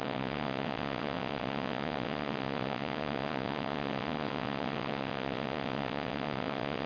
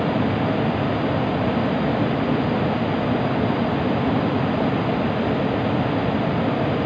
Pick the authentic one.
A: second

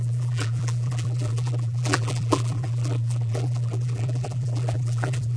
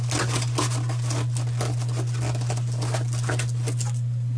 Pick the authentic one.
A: second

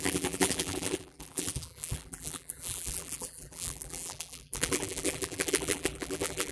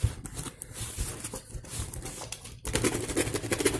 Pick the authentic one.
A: second